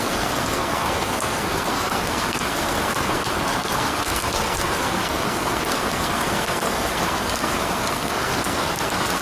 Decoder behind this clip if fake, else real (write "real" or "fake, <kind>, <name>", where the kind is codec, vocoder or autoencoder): fake, codec, SNAC